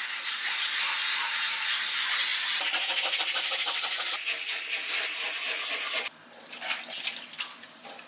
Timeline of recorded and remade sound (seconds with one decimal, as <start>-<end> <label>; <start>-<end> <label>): 0.0-8.1 recorded